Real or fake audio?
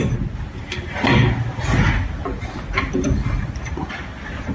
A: real